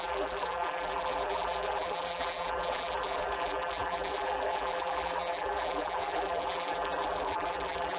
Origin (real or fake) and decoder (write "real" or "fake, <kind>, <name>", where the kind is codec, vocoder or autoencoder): fake, vocoder, BigVGAN v2